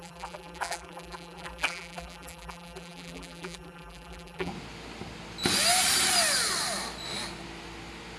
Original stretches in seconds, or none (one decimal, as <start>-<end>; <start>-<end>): 4.5-8.2